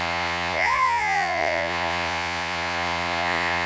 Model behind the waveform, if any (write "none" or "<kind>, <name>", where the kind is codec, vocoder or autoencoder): vocoder, Vocos